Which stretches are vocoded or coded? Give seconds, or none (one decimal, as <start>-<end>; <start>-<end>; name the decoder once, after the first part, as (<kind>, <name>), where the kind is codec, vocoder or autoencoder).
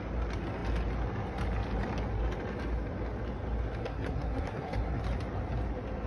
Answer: 3.8-5.0 (codec, SNAC)